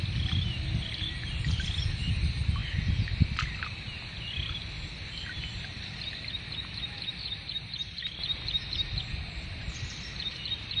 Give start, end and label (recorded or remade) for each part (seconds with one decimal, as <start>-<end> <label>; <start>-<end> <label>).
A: 0.0-10.8 recorded